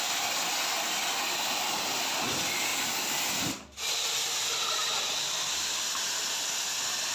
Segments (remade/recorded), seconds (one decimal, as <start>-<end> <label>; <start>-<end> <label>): 0.0-7.1 recorded